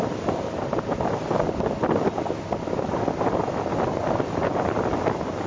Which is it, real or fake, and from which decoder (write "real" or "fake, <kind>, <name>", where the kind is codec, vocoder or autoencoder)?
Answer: real